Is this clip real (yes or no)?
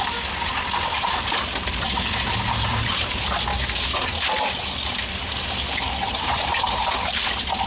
yes